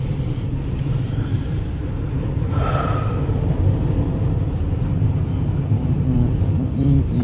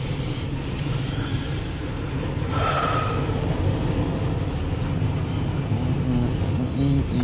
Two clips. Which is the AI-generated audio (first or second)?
first